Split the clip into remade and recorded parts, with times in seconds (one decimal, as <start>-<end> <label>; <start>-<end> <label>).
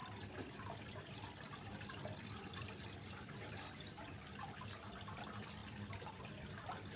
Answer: 0.0-4.2 remade; 4.2-5.6 recorded; 5.6-6.2 remade; 6.2-7.0 recorded